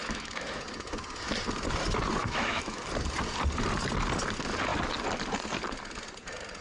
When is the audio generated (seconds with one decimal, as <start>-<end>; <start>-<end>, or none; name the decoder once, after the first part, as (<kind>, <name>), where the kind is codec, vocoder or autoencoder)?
0.0-0.6 (autoencoder, DAC-VAE); 2.2-2.8